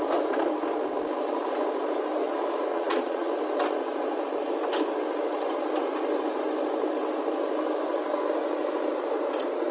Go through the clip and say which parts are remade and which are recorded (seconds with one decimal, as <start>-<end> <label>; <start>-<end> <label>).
0.0-2.7 recorded; 2.7-3.3 remade; 3.3-9.7 recorded